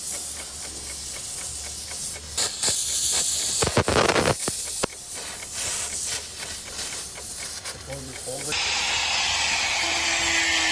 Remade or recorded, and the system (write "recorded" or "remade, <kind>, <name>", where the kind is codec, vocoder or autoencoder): recorded